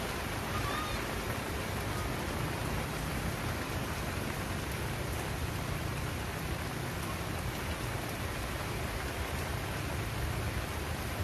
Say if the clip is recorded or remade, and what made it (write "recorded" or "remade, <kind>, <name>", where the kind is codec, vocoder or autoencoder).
recorded